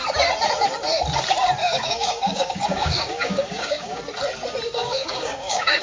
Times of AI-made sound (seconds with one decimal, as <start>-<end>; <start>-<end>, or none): 1.6-4.0; 4.8-5.8